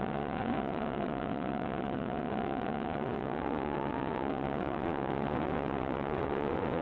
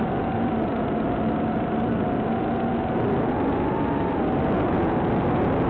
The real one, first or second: second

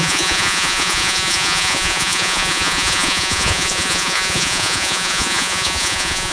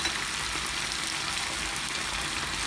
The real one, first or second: second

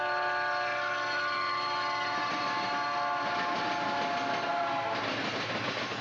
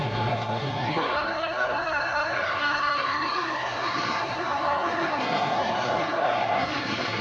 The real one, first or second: first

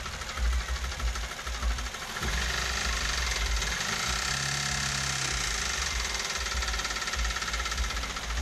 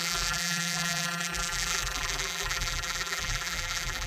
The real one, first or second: first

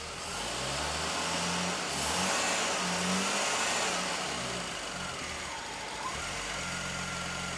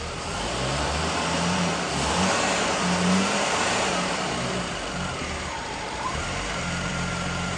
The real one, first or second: first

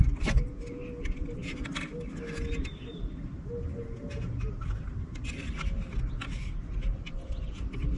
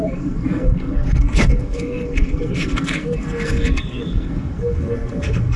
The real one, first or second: first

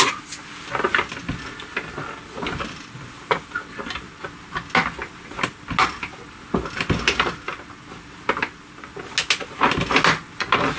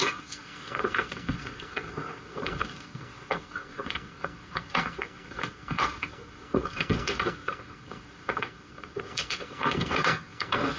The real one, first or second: first